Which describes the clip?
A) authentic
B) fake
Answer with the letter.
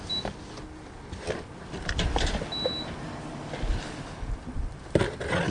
A